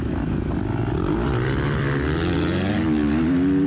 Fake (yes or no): no